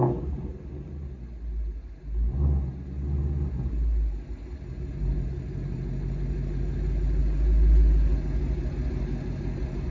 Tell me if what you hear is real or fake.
real